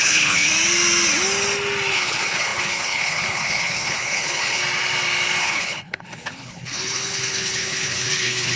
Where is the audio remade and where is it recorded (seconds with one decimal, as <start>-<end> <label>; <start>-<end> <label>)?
0.0-0.5 remade; 0.5-1.9 recorded; 1.9-4.6 remade; 4.6-5.4 recorded; 5.4-8.6 remade